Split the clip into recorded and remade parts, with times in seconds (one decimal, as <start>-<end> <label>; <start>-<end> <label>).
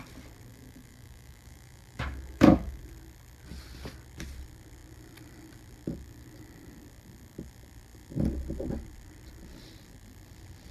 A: 0.0-0.5 recorded; 0.5-2.8 remade; 2.8-10.7 recorded